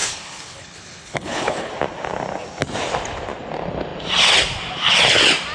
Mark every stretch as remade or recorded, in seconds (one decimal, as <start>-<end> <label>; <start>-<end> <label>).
0.0-1.7 remade; 1.7-5.5 recorded